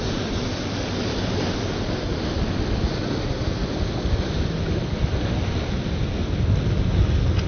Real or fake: real